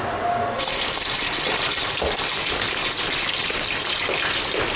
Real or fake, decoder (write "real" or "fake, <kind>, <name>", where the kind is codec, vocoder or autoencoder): real